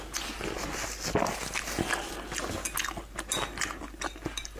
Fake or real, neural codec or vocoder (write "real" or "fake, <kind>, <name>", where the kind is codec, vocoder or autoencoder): real